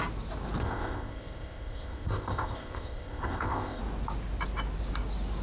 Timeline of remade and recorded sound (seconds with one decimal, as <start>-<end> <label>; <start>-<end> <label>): 0.0-0.6 recorded; 0.6-3.8 remade; 3.8-5.4 recorded